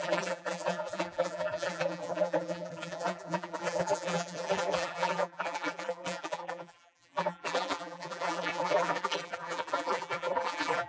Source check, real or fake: fake